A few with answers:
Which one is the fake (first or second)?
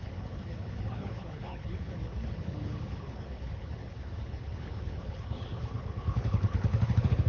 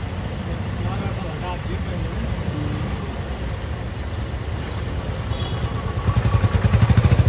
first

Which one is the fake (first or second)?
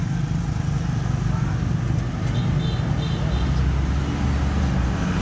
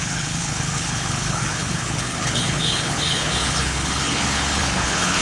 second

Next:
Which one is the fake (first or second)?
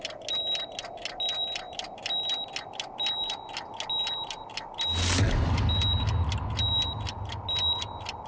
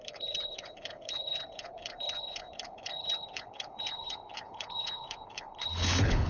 second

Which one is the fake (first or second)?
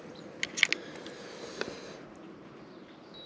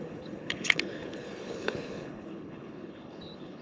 second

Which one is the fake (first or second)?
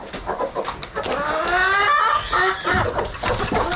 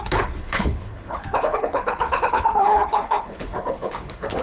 second